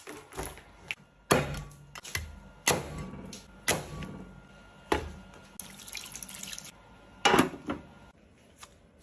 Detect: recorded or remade recorded